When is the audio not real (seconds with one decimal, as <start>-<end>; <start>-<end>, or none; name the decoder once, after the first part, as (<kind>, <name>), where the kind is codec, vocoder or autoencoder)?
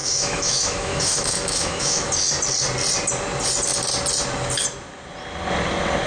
0.0-2.1 (autoencoder, DAC-VAE)